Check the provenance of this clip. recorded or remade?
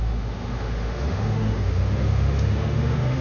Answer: remade